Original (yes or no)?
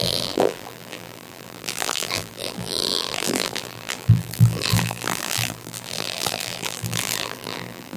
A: no